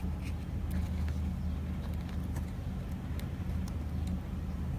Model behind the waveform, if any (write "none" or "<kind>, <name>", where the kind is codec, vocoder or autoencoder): none